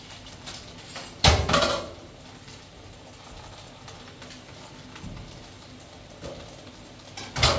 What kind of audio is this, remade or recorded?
recorded